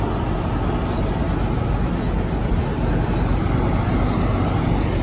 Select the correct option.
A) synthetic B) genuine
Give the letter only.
B